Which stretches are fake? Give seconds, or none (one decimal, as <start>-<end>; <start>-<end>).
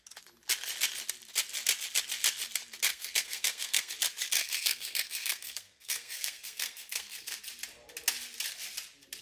2.9-3.9; 4.4-7.4